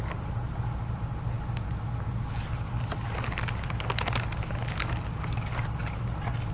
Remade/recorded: recorded